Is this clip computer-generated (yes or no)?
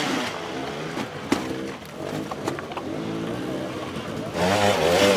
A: no